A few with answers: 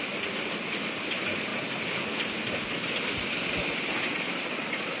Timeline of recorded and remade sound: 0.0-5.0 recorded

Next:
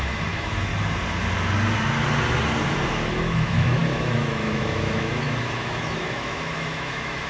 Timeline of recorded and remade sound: 0.0-0.7 remade; 0.7-2.9 recorded; 2.9-7.3 remade

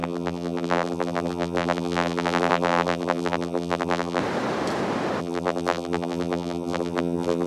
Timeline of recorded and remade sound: 0.0-4.2 remade; 4.2-5.2 recorded; 5.2-7.5 remade

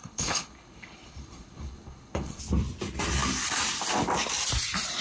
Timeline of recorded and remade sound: 0.0-2.4 remade; 2.4-5.0 recorded